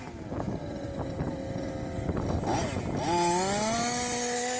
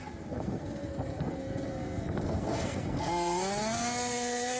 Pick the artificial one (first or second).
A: second